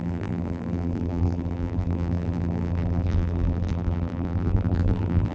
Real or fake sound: fake